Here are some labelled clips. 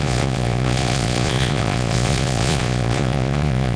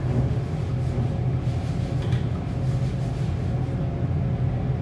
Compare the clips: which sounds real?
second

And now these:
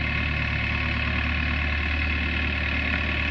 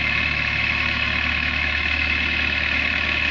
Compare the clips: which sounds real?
first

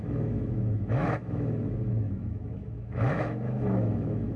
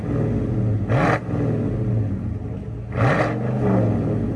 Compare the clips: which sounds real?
second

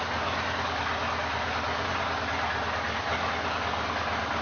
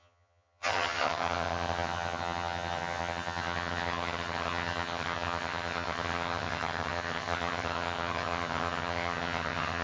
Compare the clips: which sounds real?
first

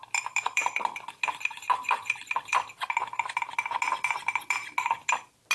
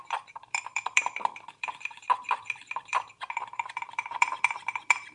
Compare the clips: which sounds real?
first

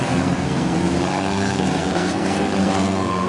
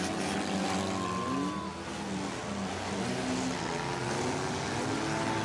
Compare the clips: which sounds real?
second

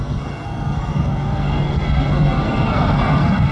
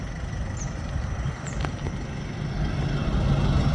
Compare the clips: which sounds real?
second